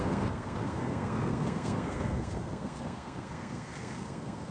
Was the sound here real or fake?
fake